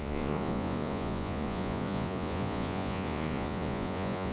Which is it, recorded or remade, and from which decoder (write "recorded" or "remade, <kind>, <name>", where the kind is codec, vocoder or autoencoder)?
remade, vocoder, Vocos